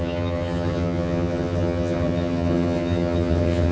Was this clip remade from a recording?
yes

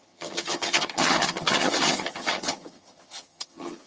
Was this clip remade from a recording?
yes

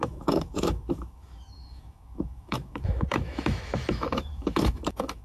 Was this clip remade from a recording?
yes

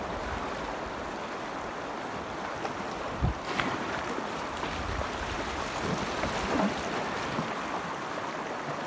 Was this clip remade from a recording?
no